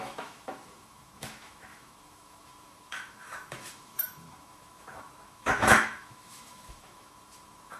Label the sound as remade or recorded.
remade